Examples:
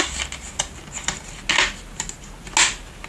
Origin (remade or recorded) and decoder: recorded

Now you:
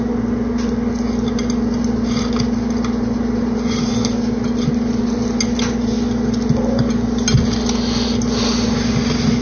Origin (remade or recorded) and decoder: recorded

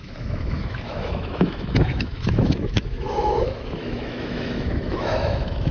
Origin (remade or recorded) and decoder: remade, autoencoder, DAC-VAE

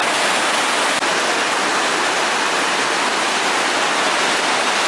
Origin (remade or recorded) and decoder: recorded